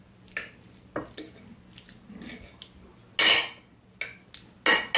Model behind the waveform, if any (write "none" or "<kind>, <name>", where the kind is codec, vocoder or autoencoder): none